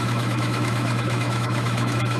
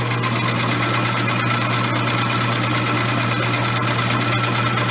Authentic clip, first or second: second